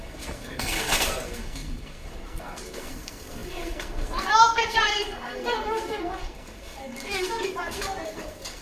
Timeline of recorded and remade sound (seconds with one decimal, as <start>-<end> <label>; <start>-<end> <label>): 0.0-8.6 remade